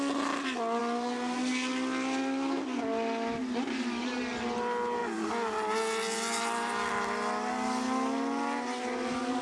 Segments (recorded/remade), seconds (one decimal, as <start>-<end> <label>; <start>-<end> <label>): 0.0-9.4 recorded